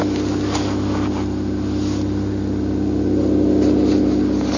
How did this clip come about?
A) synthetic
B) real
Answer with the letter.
B